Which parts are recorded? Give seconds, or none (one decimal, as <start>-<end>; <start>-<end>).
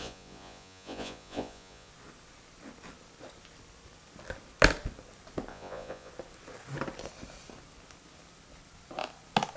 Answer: 1.9-5.5; 6.1-9.6